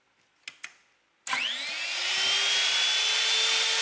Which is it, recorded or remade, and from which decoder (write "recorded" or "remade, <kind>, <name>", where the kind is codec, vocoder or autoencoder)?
recorded